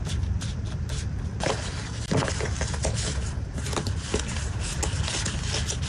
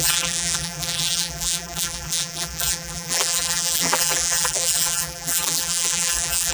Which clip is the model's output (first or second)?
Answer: second